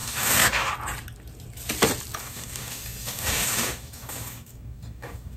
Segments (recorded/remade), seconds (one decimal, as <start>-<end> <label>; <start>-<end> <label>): 0.0-0.7 remade; 0.7-2.2 recorded; 2.2-5.4 remade